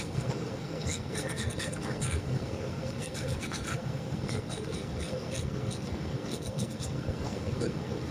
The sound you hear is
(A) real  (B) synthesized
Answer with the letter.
B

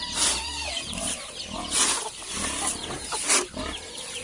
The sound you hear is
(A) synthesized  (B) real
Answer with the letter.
B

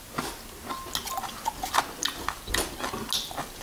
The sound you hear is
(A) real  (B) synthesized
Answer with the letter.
A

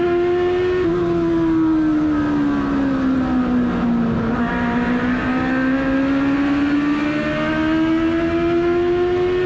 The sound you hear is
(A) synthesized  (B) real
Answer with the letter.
B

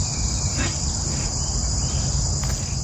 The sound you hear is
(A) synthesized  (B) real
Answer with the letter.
B